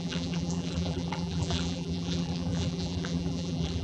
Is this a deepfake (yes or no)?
yes